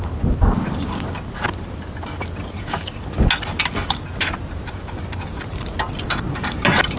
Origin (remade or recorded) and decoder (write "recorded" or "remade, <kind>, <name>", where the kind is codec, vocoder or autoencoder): recorded